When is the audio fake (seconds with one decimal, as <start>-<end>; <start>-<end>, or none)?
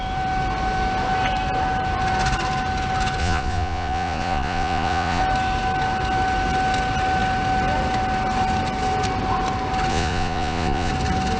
3.2-5.2; 9.9-10.9